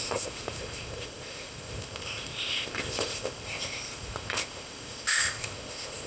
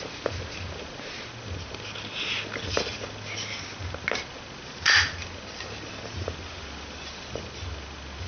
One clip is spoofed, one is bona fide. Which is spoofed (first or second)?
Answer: first